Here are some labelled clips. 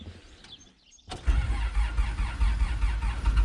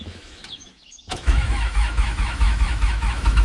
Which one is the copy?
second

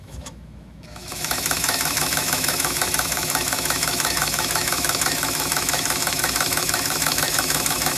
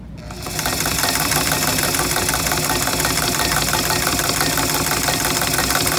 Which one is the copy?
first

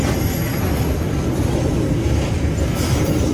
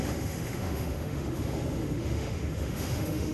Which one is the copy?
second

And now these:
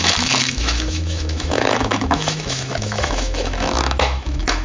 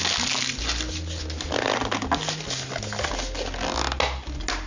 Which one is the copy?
first